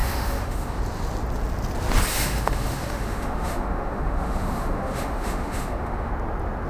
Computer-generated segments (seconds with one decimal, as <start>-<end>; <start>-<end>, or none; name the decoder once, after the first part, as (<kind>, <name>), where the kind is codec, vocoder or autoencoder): 0.0-0.8 (autoencoder, DAC-VAE); 2.1-6.1